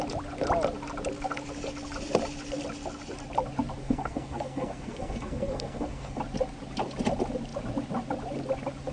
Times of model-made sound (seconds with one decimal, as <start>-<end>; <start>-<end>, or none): 3.8-6.2